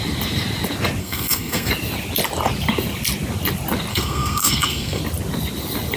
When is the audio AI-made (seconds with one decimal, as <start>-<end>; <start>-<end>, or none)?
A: 1.0-1.7; 3.9-5.0